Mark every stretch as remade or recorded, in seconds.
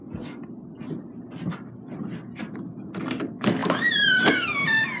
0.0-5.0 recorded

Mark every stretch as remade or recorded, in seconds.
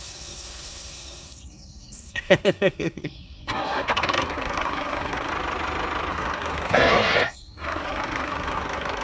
0.0-5.3 remade; 5.3-6.1 recorded; 6.1-9.0 remade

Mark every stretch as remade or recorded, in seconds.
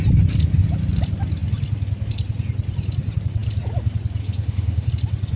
0.0-4.2 recorded; 4.2-4.9 remade; 4.9-5.4 recorded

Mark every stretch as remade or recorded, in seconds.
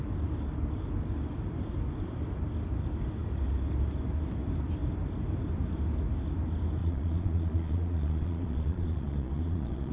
0.0-6.8 recorded; 6.8-9.9 remade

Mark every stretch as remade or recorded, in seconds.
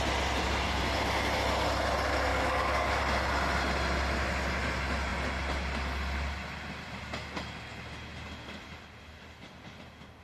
0.0-2.3 recorded; 2.3-3.0 remade; 3.0-10.2 recorded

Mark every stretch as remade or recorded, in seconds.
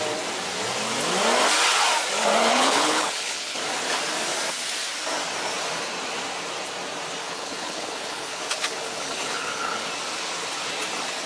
0.0-2.5 recorded; 2.5-3.6 remade; 3.6-7.2 recorded; 7.2-9.9 remade; 9.9-11.3 recorded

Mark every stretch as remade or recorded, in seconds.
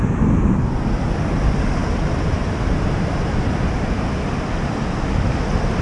0.0-1.8 recorded; 1.8-2.4 remade; 2.4-5.8 recorded